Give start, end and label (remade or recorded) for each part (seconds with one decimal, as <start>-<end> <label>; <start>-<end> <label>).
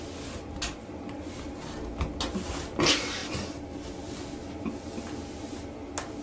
0.0-3.2 recorded; 3.2-4.0 remade; 4.0-6.2 recorded